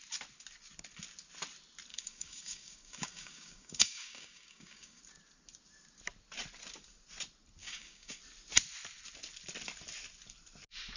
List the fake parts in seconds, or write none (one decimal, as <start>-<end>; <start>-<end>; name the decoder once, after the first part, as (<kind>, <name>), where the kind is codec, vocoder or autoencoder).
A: 1.9-5.0 (codec, DAC); 7.6-8.2